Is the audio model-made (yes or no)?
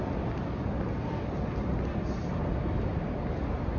no